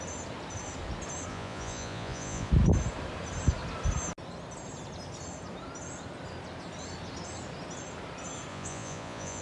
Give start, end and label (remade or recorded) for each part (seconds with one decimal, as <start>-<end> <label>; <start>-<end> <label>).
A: 0.0-1.3 recorded; 1.3-2.5 remade; 2.5-8.5 recorded; 8.5-9.4 remade